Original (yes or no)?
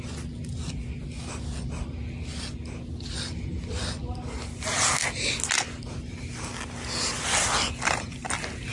yes